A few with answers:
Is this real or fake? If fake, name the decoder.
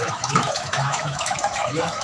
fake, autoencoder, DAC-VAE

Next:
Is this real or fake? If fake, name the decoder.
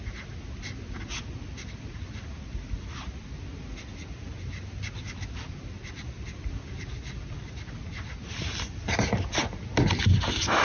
real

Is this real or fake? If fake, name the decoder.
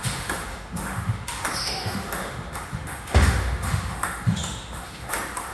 fake, autoencoder, DAC-VAE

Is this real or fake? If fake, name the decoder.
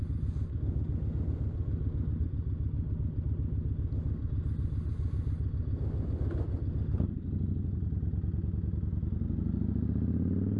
real